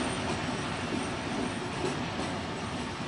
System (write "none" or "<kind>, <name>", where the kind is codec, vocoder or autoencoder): none